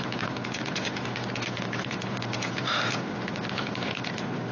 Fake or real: real